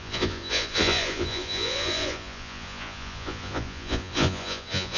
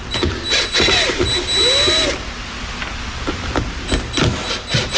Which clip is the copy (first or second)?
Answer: first